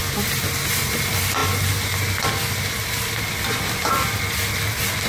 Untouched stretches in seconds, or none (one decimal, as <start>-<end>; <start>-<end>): none